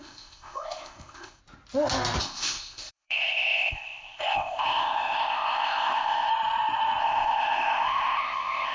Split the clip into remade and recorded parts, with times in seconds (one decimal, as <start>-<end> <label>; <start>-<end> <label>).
0.0-1.4 remade; 1.4-2.2 recorded; 2.2-6.3 remade; 6.3-7.0 recorded; 7.0-8.7 remade